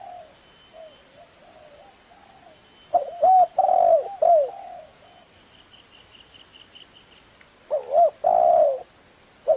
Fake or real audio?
real